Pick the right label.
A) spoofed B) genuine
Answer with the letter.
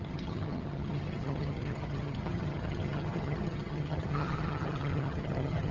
A